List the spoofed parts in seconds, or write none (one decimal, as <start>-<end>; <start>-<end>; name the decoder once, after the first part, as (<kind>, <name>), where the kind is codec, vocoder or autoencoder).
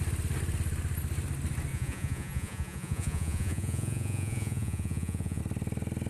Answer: 1.7-5.4 (vocoder, Vocos)